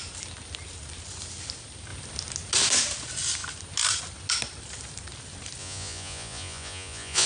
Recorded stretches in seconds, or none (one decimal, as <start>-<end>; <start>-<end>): 0.0-5.6